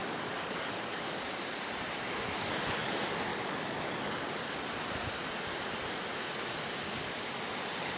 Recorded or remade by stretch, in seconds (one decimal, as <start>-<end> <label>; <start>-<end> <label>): 0.0-1.3 remade; 1.3-3.3 recorded; 3.3-4.6 remade; 4.6-8.0 recorded